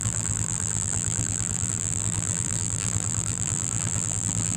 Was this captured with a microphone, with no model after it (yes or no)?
no